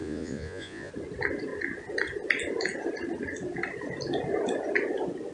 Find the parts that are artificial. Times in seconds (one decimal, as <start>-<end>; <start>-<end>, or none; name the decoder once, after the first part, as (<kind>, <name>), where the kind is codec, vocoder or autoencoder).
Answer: 0.0-0.9 (vocoder, Vocos)